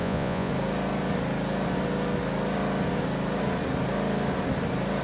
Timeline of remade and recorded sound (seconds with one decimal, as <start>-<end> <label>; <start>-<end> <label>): 0.0-0.5 remade; 0.5-5.0 recorded